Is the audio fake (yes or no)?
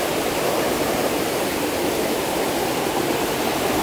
no